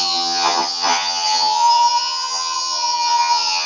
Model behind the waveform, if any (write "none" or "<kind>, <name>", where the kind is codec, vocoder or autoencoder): vocoder, HiFi-GAN